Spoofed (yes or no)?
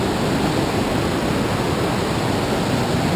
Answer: no